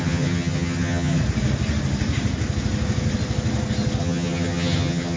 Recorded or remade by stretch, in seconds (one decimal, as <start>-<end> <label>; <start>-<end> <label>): 0.0-1.2 remade; 1.2-4.0 recorded; 4.0-5.2 remade